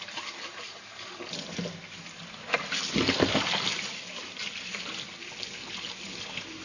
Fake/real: real